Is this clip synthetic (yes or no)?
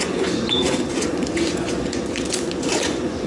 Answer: yes